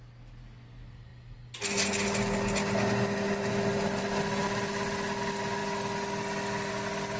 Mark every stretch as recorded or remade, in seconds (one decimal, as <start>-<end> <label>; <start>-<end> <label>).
0.0-7.2 recorded